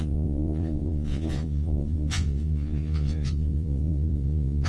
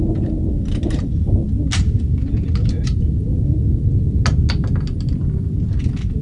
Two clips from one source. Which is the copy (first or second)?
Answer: first